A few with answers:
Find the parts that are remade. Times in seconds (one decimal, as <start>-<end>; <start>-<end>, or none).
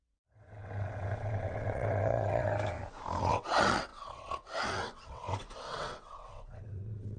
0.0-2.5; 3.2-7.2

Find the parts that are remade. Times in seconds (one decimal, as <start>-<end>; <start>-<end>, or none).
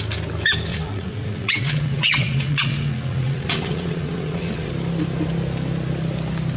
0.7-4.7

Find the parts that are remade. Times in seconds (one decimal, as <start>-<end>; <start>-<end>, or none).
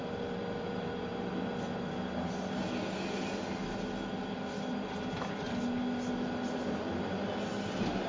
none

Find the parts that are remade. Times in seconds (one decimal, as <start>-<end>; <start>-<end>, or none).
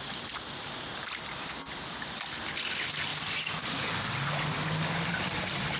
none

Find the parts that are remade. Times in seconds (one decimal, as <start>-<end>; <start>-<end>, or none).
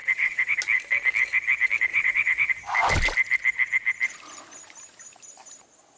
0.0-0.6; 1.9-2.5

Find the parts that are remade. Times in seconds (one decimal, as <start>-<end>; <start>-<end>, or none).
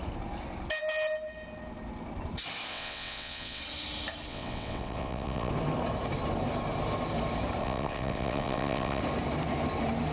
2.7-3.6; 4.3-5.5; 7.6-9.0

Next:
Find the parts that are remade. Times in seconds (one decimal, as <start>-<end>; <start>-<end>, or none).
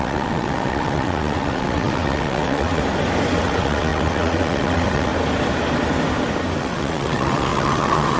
0.0-2.8; 3.3-5.1; 6.6-8.2